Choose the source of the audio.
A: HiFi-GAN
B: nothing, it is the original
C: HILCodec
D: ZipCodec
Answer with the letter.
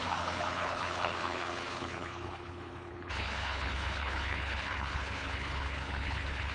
C